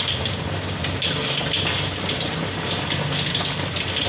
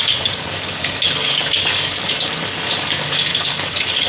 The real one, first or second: first